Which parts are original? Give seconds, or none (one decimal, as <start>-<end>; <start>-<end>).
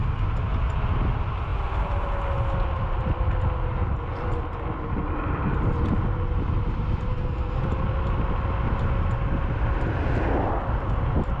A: 0.0-7.1; 7.6-11.4